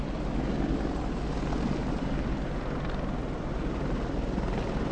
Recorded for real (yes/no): yes